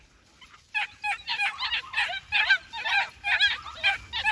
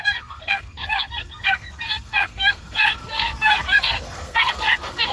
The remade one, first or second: second